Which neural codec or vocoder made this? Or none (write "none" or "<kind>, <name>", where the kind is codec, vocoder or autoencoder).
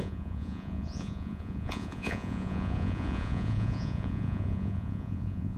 vocoder, Vocos